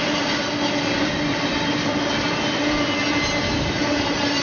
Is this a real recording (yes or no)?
yes